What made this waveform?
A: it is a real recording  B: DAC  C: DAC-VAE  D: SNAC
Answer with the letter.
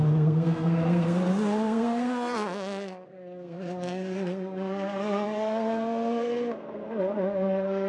D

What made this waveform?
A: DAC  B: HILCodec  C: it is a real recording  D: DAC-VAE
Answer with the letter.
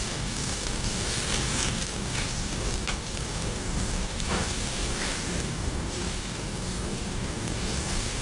A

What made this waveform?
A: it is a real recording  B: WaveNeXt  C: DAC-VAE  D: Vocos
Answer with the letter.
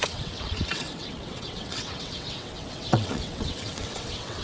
B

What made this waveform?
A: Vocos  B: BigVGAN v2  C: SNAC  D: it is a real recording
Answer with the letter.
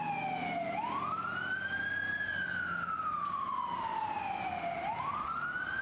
D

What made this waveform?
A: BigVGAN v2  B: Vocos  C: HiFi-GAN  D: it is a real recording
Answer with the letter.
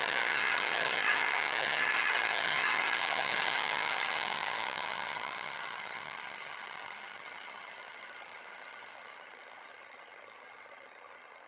C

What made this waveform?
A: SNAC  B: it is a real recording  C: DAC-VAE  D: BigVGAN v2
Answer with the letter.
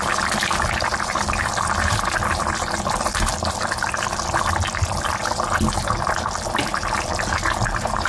B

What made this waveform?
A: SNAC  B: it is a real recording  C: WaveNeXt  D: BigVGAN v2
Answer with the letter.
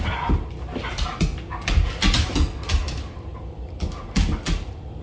B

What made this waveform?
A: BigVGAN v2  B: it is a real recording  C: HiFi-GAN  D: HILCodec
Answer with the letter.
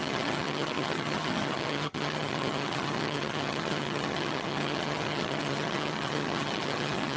C